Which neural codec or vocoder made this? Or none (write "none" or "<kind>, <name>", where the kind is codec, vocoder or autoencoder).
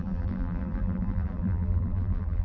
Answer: vocoder, BigVGAN v2